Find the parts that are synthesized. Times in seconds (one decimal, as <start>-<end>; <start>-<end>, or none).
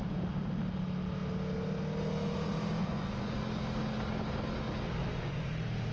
2.8-3.4; 5.0-5.5